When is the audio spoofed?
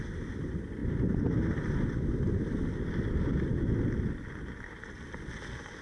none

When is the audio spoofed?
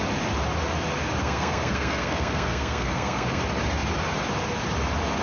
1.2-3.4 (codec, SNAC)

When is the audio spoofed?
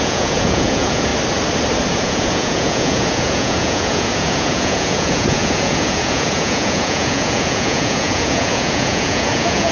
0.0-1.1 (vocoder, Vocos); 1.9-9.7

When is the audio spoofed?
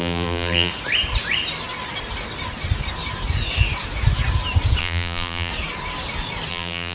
0.0-0.7 (vocoder, BigVGAN v2); 4.8-5.5; 6.5-6.9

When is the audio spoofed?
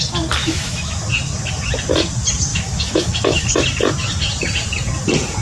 0.4-1.0 (autoencoder, DAC-VAE); 2.5-3.5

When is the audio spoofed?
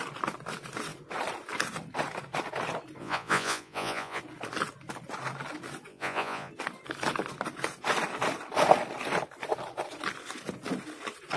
3.0-4.2 (vocoder, Vocos); 5.9-6.5